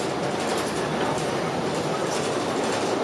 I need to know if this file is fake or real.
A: real